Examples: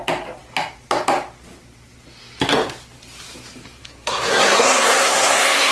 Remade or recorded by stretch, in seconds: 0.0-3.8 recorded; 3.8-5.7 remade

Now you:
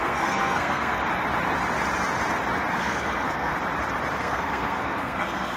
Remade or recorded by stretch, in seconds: 0.0-1.0 remade; 1.0-2.7 recorded; 2.7-3.5 remade; 3.5-4.2 recorded; 4.2-5.6 remade

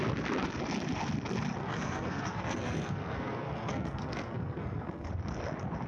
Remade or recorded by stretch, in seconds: 0.0-1.6 recorded; 1.6-5.1 remade; 5.1-5.9 recorded